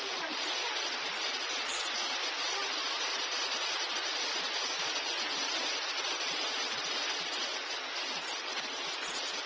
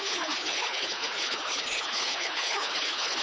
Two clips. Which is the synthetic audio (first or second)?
second